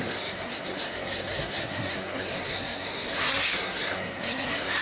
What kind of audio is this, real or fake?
fake